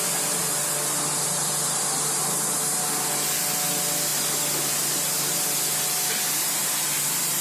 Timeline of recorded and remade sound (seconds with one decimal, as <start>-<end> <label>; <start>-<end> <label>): 0.0-7.4 recorded